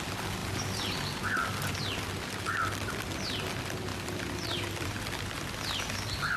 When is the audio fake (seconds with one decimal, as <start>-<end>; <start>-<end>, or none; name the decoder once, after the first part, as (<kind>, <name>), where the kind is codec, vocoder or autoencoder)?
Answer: 3.9-4.9 (vocoder, BigVGAN v2)